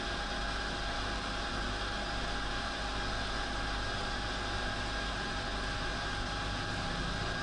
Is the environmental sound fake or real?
real